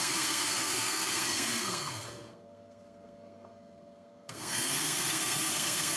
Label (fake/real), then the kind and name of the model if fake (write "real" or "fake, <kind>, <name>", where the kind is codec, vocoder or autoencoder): fake, codec, SNAC